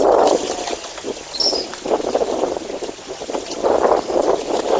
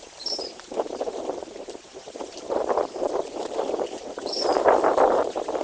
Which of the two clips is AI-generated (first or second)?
second